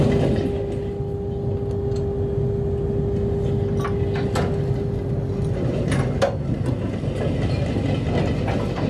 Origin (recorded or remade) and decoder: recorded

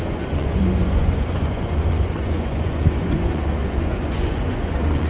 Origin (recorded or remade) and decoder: remade, vocoder, Vocos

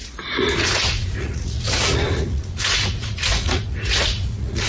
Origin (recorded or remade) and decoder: remade, vocoder, Vocos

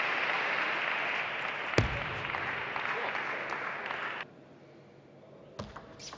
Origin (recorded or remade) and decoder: recorded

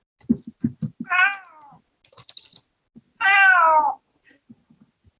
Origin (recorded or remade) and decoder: recorded